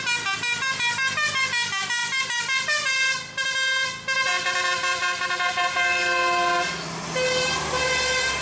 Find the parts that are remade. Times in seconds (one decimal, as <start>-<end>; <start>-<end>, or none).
none